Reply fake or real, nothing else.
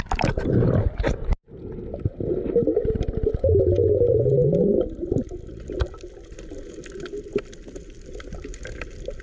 real